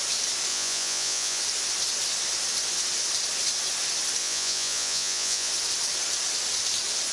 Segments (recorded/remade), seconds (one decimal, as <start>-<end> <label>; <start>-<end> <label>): 0.0-0.5 recorded; 0.5-1.4 remade; 1.4-4.2 recorded; 4.2-5.5 remade; 5.5-7.1 recorded